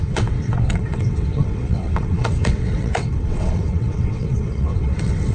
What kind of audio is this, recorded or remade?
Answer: remade